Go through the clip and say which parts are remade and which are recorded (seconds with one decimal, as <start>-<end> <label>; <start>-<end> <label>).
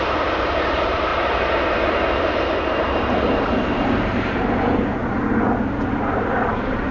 0.0-5.0 remade; 5.0-5.9 recorded; 5.9-6.9 remade